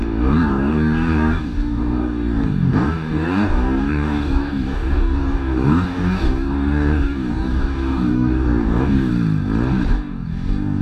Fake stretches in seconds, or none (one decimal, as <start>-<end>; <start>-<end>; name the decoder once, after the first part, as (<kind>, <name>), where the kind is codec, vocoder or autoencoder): 0.0-9.1 (codec, DAC); 9.9-10.8